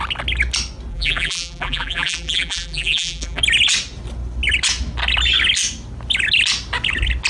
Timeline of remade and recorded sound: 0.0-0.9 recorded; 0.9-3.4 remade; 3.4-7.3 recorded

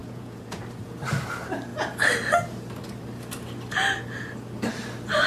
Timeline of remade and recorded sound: 0.0-0.6 remade; 0.6-5.3 recorded

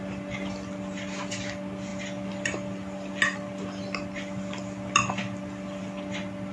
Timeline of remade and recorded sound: 0.0-6.5 recorded

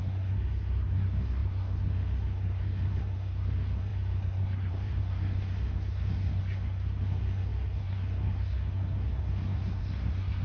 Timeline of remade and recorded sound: 0.0-10.4 remade

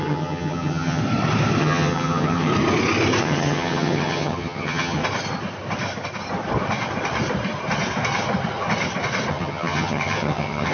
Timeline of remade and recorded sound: 0.0-1.0 remade; 1.0-1.6 recorded; 1.6-2.5 remade; 2.5-3.2 recorded; 3.2-5.0 remade; 5.0-9.3 recorded; 9.3-10.7 remade